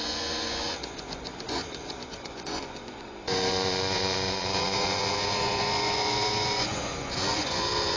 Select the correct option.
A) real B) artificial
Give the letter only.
B